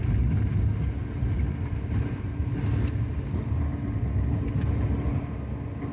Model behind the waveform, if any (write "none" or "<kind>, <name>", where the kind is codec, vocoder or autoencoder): none